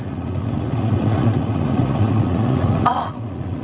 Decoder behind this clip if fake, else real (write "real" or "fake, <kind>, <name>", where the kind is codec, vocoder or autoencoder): fake, vocoder, Vocos